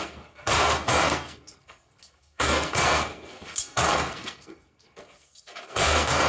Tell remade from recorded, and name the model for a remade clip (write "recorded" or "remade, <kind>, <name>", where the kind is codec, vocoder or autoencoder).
remade, codec, SNAC